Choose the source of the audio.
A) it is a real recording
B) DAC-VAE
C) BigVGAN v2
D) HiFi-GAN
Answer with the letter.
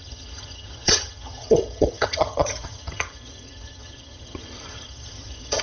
D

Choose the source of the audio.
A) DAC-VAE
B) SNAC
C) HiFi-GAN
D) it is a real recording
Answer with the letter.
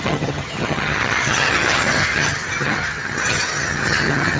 C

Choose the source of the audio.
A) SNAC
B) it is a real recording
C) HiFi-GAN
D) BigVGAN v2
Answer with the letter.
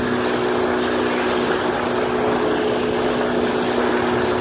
B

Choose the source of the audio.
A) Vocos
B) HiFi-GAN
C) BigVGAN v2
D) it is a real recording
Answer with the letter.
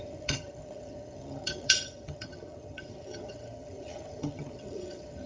B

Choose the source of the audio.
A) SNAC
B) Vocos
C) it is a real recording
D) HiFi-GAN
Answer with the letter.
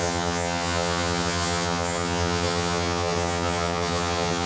D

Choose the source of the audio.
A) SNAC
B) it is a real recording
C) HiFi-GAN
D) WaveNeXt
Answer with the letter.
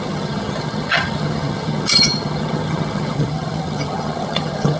C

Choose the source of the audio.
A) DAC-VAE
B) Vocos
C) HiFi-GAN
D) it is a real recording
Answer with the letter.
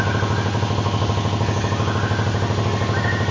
D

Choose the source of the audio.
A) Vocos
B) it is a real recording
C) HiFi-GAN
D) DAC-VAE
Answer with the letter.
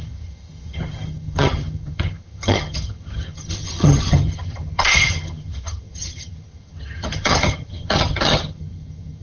C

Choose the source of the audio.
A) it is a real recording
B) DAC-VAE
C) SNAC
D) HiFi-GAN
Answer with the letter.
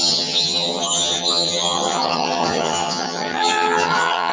D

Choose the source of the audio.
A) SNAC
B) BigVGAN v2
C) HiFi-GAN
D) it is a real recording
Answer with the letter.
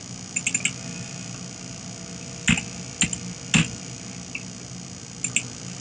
D